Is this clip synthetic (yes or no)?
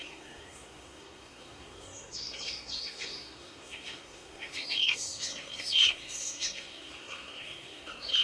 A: yes